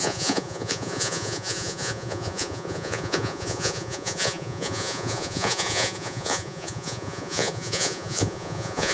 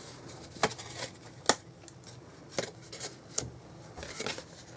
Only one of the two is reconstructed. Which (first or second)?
first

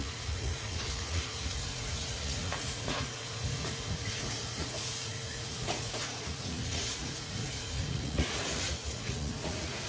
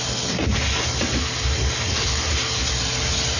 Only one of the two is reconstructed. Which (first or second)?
first